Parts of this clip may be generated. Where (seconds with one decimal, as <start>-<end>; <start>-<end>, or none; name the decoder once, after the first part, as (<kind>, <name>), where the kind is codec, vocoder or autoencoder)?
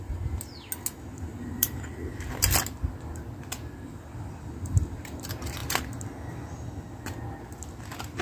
1.3-2.4 (vocoder, BigVGAN v2)